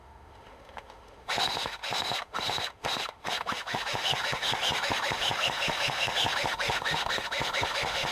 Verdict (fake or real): fake